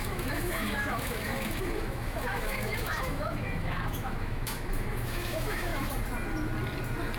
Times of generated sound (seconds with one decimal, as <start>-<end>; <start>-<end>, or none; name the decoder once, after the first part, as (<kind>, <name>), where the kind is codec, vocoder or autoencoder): 0.0-5.7 (autoencoder, DAC-VAE)